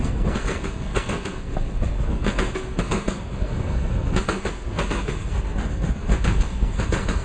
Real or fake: fake